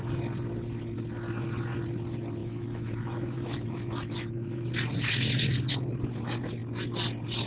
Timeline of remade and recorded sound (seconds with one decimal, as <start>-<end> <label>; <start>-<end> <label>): 0.0-2.4 recorded; 2.4-4.7 remade; 4.7-7.5 recorded